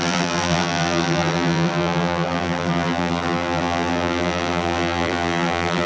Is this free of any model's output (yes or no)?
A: no